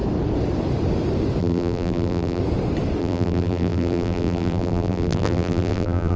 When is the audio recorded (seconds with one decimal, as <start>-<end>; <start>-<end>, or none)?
0.0-1.4; 2.4-3.0